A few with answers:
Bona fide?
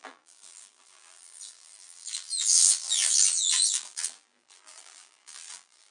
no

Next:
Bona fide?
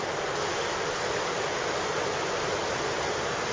yes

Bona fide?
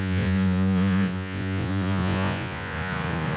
no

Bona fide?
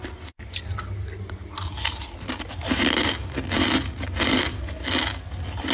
yes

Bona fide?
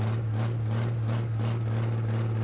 yes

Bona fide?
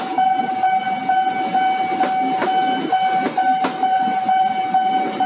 yes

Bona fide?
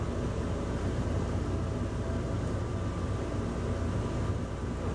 yes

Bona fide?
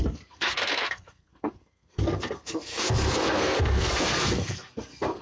no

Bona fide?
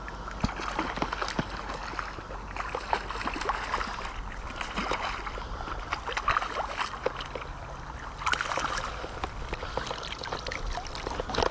yes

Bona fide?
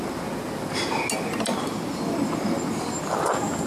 yes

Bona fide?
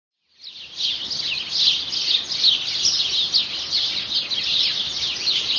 yes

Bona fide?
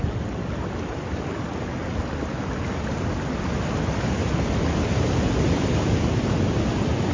yes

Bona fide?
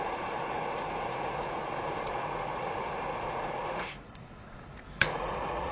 no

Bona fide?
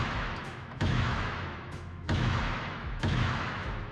no